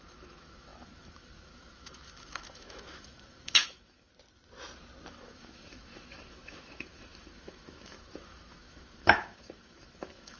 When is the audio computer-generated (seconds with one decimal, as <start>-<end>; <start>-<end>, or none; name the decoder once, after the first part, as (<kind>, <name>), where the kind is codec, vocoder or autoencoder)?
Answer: 0.0-4.1 (autoencoder, DAC-VAE); 5.1-10.4